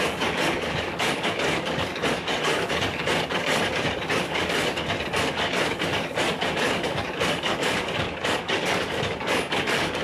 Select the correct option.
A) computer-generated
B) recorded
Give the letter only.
A